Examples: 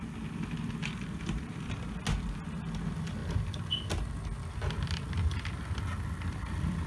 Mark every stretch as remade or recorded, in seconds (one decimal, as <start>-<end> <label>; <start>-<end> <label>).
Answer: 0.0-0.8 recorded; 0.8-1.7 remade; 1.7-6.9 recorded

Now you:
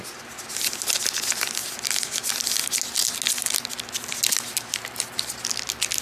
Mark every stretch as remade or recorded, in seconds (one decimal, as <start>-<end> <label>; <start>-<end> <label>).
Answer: 0.0-6.0 recorded

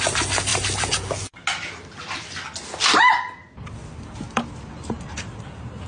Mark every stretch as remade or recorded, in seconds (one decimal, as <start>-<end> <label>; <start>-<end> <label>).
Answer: 0.0-5.9 recorded

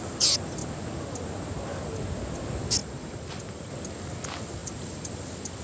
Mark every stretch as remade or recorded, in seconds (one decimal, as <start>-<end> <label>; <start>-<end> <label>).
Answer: 0.0-2.8 recorded; 2.8-3.7 remade; 3.7-4.6 recorded; 4.6-5.6 remade

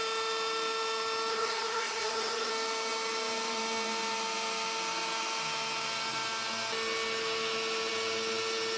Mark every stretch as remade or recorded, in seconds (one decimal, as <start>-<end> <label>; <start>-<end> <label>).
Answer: 0.0-1.3 recorded; 1.3-2.5 remade; 2.5-8.8 recorded

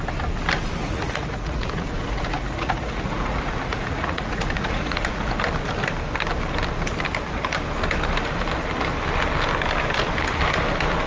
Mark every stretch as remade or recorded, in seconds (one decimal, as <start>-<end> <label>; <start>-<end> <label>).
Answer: 0.0-0.8 recorded; 0.8-5.3 remade; 5.3-11.1 recorded

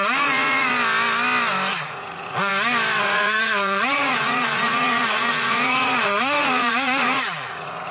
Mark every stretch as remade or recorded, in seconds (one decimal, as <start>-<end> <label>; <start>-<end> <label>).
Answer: 0.0-0.7 remade; 0.7-1.7 recorded; 1.7-2.5 remade; 2.5-3.0 recorded; 3.0-7.9 remade